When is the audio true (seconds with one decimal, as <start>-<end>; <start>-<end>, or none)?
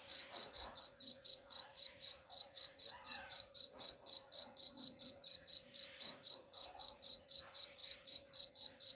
none